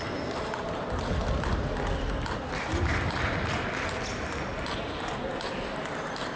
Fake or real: real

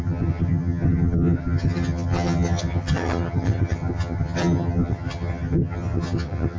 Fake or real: fake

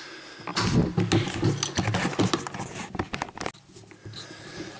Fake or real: real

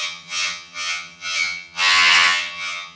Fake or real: fake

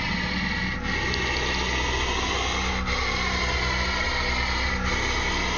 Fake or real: real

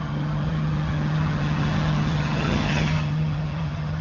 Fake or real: fake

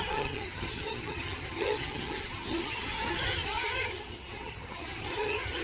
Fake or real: fake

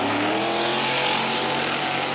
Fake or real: real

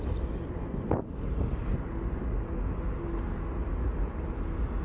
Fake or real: real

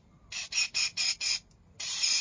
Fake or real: real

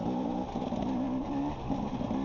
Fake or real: real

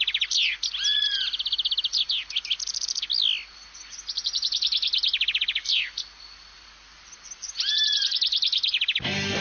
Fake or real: real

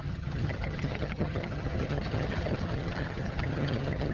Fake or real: fake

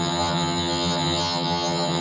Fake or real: fake